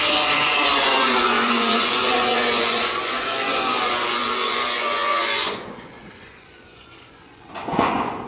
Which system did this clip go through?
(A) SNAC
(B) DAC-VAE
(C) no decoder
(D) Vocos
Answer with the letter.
D